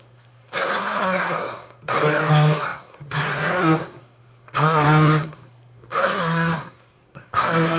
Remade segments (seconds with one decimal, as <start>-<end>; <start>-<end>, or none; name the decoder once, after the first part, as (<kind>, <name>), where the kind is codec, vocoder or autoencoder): 0.0-7.8 (codec, SNAC)